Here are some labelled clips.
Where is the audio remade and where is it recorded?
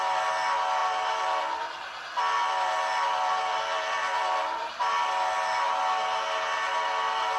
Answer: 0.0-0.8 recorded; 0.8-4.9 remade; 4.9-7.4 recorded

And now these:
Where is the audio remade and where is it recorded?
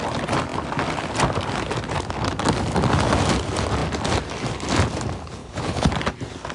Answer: 0.0-5.4 recorded; 5.4-5.9 remade; 5.9-6.5 recorded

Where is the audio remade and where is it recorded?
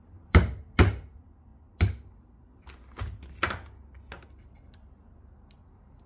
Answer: 0.0-6.1 recorded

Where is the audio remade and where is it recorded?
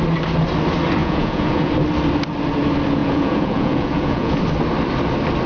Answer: 0.0-1.0 recorded; 1.0-1.7 remade; 1.7-3.0 recorded; 3.0-4.4 remade; 4.4-5.5 recorded